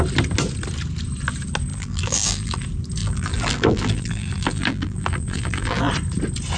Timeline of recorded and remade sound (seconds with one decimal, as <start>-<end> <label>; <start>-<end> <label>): 0.0-1.7 recorded; 1.7-2.6 remade; 2.6-3.0 recorded; 3.0-5.9 remade; 5.9-6.6 recorded